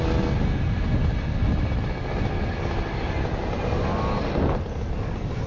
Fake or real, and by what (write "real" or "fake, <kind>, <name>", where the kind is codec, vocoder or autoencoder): real